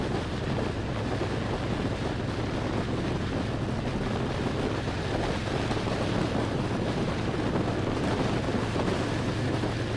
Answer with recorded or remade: recorded